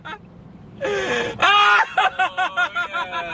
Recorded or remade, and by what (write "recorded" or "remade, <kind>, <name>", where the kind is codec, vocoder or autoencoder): recorded